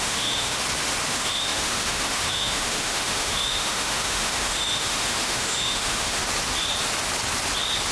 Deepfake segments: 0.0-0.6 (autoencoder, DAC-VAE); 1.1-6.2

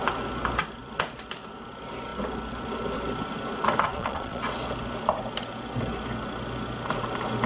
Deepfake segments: 3.9-4.4 (vocoder, Vocos)